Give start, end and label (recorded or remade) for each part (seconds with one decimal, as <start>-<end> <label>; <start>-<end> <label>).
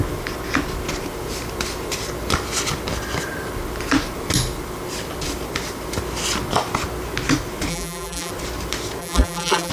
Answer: 0.0-7.7 recorded; 7.7-8.3 remade; 8.3-9.0 recorded; 9.0-9.7 remade